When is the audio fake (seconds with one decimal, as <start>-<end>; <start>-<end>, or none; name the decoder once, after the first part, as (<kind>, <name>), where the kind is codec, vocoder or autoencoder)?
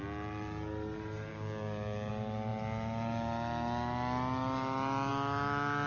1.3-2.1 (codec, DAC)